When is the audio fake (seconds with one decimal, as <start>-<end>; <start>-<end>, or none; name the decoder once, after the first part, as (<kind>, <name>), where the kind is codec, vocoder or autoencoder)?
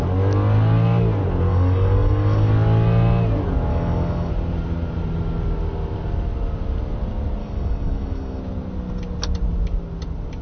1.5-2.5 (codec, DAC); 3.7-4.3; 7.4-8.4